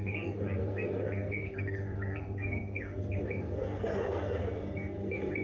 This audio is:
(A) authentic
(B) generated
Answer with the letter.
B